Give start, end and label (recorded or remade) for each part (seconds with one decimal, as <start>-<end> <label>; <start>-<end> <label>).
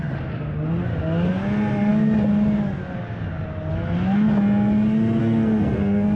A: 0.0-5.2 recorded; 5.2-6.2 remade